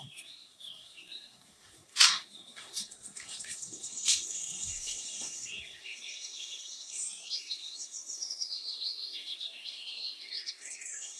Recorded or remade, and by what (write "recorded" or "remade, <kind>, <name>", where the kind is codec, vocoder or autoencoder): remade, codec, SNAC